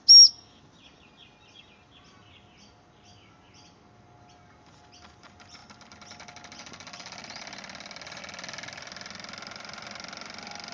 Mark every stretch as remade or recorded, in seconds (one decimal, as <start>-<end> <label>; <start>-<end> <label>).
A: 0.0-10.7 recorded